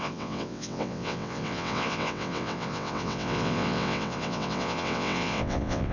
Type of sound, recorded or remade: remade